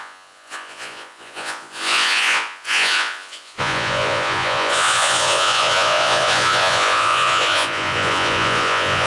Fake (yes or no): yes